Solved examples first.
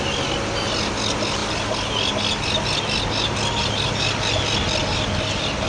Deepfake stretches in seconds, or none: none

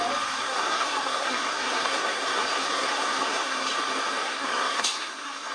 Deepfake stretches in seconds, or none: 0.4-3.7 (codec, SNAC); 4.2-5.5

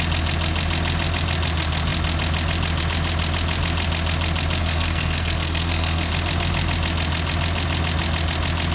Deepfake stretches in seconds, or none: 4.6-6.1 (codec, SNAC)

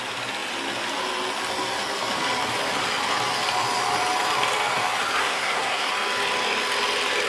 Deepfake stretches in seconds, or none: 5.2-5.9 (codec, SNAC)

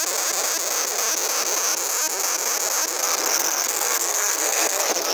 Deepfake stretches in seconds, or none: 3.0-5.1 (codec, SNAC)

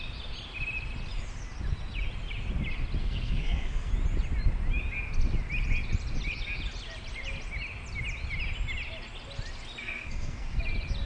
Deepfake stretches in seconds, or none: 3.0-3.9 (codec, SNAC); 9.8-10.6